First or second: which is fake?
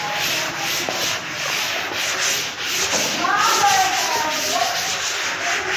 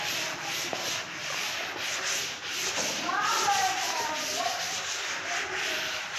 second